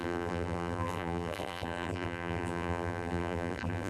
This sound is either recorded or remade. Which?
remade